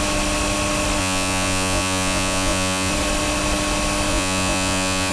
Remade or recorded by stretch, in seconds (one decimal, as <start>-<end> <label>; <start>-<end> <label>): 0.0-1.0 recorded; 1.0-2.9 remade; 2.9-4.1 recorded; 4.1-5.1 remade